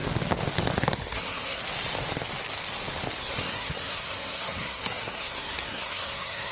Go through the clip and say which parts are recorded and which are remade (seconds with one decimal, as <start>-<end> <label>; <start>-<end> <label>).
0.0-1.0 recorded; 1.0-1.6 remade; 1.6-3.2 recorded; 3.2-6.5 remade